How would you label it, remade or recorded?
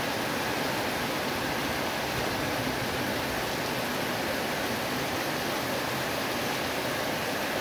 recorded